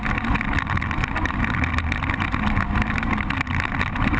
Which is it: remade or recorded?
recorded